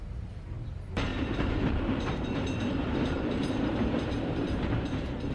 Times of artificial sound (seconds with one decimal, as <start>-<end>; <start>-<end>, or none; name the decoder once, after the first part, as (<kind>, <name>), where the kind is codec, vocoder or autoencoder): 0.0-5.3 (vocoder, BigVGAN v2)